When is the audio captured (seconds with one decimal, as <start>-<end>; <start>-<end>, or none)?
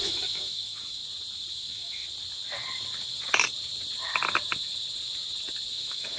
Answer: 1.0-1.5; 2.0-5.7